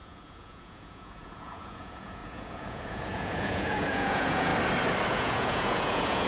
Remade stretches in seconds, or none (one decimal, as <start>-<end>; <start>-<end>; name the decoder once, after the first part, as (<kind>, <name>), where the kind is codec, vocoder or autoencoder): 0.0-4.5 (vocoder, Vocos); 5.1-6.3